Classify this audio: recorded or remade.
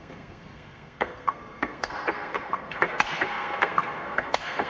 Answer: remade